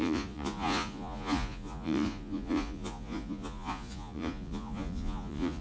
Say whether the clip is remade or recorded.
remade